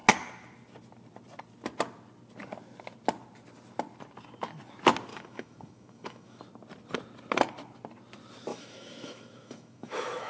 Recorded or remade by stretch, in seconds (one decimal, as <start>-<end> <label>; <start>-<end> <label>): 0.0-5.1 recorded; 5.1-6.4 remade; 6.4-8.5 recorded; 8.5-10.3 remade

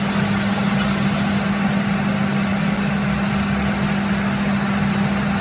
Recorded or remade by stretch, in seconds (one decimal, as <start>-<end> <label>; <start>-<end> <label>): 0.0-5.4 recorded

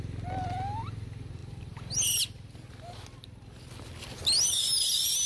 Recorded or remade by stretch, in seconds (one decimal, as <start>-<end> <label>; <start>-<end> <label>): 0.0-5.3 recorded